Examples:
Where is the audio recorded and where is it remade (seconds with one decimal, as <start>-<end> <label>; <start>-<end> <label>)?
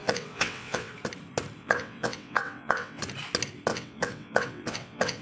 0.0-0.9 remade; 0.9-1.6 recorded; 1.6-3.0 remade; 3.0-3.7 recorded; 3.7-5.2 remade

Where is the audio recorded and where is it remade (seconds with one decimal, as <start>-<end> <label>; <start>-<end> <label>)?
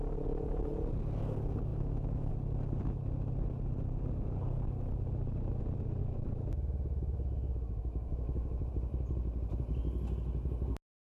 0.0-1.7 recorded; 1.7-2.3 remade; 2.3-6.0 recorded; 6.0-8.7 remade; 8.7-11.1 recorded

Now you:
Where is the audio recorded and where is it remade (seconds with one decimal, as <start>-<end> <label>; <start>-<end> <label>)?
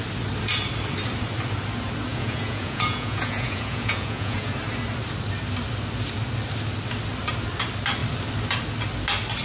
0.0-2.1 recorded; 2.1-4.5 remade; 4.5-9.4 recorded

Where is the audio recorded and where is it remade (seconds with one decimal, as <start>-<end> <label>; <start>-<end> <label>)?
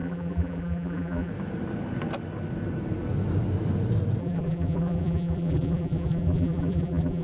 0.0-1.3 remade; 1.3-4.2 recorded; 4.2-7.2 remade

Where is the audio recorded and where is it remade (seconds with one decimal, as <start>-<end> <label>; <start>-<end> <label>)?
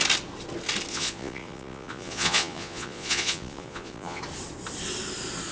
0.0-0.9 recorded; 0.9-4.2 remade; 4.2-5.5 recorded